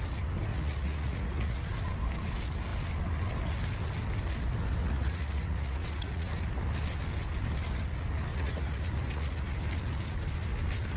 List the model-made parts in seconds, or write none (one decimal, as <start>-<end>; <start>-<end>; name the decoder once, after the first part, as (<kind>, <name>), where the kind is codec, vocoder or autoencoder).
0.5-1.7 (vocoder, Vocos); 4.8-6.3; 8.3-9.6